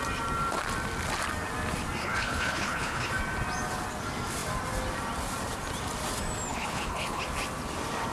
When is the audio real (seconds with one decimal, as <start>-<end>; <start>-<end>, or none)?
0.0-2.0; 3.1-6.5; 7.2-8.1

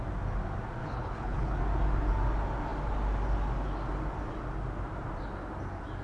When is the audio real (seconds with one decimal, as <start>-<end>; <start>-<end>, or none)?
0.0-0.8; 1.6-6.0

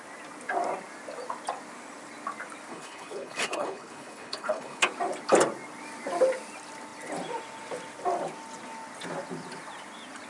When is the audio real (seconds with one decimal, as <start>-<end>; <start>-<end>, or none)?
0.0-2.7; 4.8-10.3

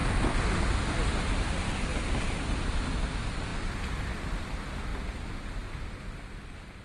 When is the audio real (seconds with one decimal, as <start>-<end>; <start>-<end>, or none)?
0.0-6.8

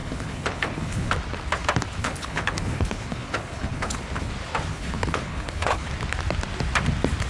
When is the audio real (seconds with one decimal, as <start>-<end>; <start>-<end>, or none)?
1.1-2.0; 4.3-4.7; 5.9-7.3

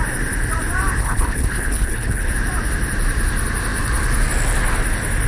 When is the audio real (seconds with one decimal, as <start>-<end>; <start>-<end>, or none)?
0.0-1.0; 2.3-5.3

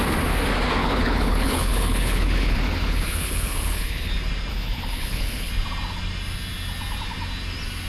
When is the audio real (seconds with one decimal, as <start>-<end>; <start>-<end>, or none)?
0.0-0.8; 4.1-4.5; 5.5-7.9

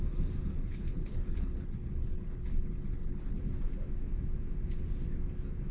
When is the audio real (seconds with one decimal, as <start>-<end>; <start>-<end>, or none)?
0.0-0.5; 3.4-5.7